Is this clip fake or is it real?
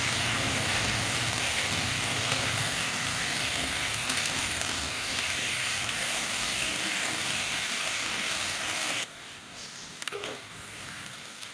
fake